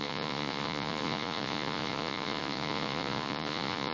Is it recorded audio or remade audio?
remade